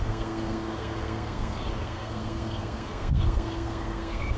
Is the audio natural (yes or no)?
no